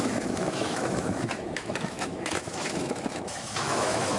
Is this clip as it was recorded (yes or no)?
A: no